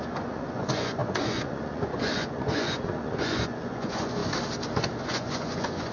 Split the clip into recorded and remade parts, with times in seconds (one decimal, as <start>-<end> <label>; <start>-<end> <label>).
0.0-4.2 remade; 4.2-5.0 recorded; 5.0-5.9 remade